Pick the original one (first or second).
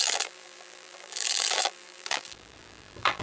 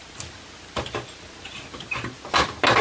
second